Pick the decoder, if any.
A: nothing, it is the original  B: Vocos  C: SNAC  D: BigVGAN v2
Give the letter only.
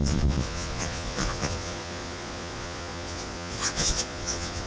B